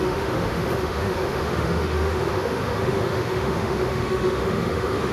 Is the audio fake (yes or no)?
yes